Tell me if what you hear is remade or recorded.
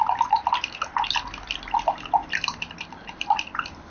recorded